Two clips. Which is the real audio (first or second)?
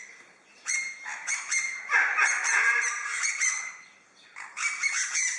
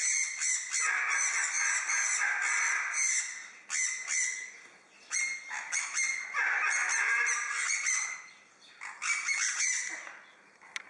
second